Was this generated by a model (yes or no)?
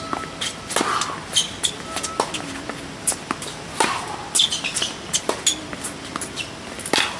no